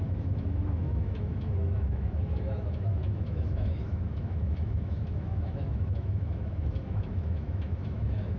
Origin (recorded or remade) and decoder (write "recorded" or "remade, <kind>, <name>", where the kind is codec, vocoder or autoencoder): remade, autoencoder, DAC-VAE